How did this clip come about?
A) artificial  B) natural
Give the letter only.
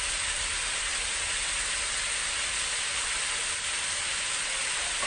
B